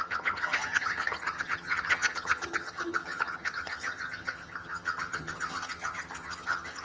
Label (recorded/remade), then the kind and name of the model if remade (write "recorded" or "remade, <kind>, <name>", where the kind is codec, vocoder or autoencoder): remade, vocoder, HiFi-GAN